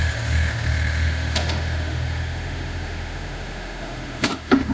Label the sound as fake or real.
fake